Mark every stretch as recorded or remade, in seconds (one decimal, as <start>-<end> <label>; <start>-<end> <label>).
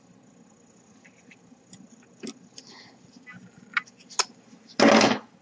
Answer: 0.0-5.4 recorded